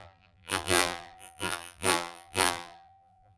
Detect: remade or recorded remade